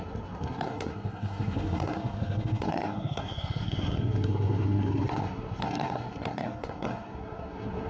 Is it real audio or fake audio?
fake